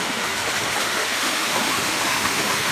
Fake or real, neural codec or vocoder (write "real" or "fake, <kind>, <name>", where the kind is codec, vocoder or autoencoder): fake, autoencoder, DAC-VAE